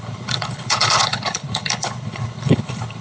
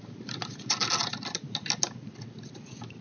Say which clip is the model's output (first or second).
first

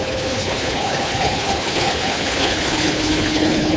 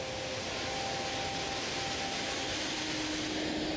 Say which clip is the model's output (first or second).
first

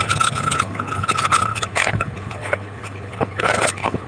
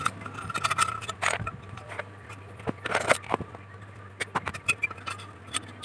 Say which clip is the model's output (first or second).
first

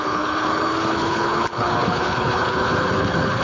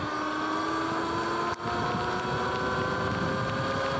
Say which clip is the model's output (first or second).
first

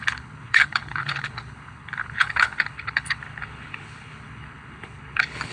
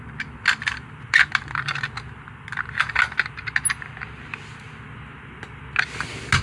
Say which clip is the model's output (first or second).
first